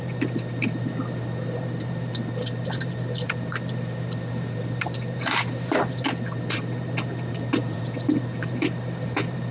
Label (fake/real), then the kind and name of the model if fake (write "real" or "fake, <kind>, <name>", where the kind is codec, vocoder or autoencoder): fake, vocoder, BigVGAN v2